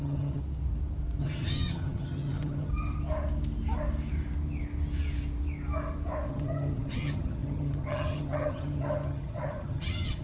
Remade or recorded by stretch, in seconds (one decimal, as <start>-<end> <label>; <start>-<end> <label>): 0.0-0.4 remade; 0.4-1.2 recorded; 1.2-2.7 remade; 2.7-6.3 recorded; 6.3-10.2 remade